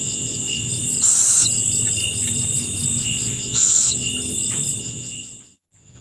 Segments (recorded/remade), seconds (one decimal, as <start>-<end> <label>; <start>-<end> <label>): 0.0-0.7 remade; 0.7-3.0 recorded; 3.0-4.1 remade; 4.1-4.8 recorded; 4.8-6.0 remade